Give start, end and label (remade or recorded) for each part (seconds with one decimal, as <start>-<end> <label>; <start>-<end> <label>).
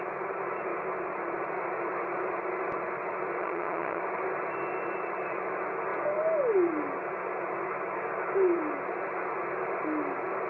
0.0-3.4 recorded; 3.4-4.0 remade; 4.0-10.5 recorded